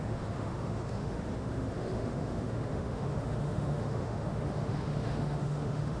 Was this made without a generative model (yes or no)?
no